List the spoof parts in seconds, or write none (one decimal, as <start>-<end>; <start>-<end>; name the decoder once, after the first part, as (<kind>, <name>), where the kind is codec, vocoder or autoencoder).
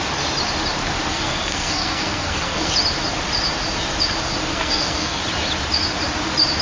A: 1.1-2.7 (codec, SNAC); 4.5-5.2